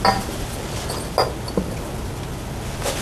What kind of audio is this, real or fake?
real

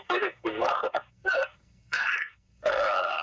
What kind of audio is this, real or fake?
fake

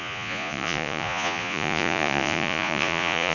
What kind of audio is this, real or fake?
fake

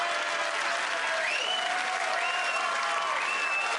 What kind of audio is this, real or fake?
real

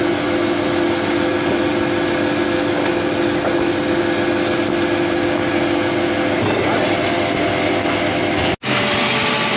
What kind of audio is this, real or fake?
real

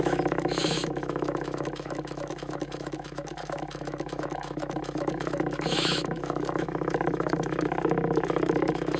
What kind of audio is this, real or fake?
fake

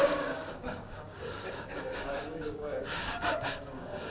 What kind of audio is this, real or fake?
fake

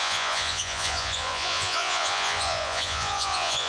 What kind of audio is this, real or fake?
fake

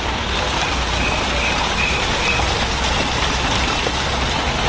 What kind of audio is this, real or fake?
real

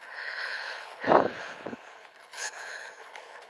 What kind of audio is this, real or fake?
fake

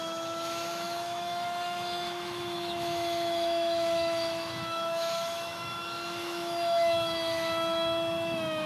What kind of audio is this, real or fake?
fake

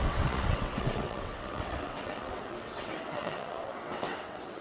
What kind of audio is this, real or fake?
fake